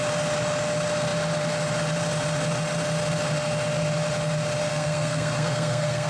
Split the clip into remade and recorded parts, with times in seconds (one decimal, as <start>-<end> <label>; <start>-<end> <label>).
0.0-4.7 recorded; 4.7-6.1 remade